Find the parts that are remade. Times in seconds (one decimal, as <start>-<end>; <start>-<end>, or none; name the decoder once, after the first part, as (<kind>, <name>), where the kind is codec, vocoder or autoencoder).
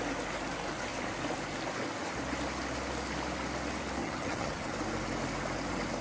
4.0-4.7 (vocoder, HiFi-GAN)